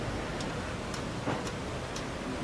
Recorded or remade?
recorded